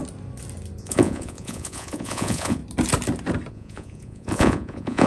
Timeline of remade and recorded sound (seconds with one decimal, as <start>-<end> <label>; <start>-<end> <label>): 0.0-0.8 recorded; 0.8-2.6 remade; 2.6-3.5 recorded; 3.5-5.1 remade